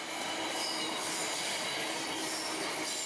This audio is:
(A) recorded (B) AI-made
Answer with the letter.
A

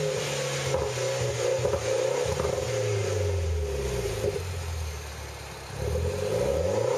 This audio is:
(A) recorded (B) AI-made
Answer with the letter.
A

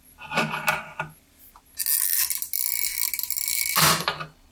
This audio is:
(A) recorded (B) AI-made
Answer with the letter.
A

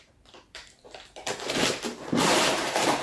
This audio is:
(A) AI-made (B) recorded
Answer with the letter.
A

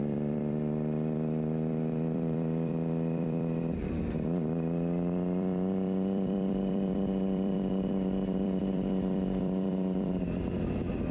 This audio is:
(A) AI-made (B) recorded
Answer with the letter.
A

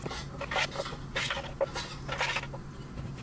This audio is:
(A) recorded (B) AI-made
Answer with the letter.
A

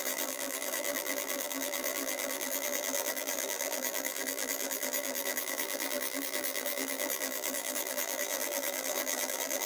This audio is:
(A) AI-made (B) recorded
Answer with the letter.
A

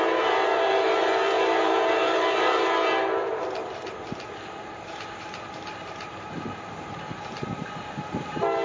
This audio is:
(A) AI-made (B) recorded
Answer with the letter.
A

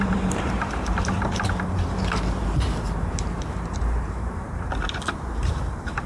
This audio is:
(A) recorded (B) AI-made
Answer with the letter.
B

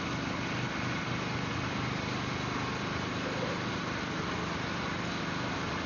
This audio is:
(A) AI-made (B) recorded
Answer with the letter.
B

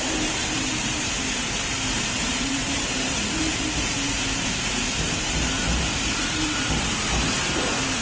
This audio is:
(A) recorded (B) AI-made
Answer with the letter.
B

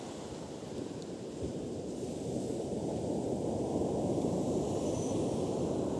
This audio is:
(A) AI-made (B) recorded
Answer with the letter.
B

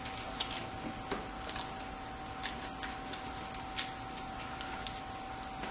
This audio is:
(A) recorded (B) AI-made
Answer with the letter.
A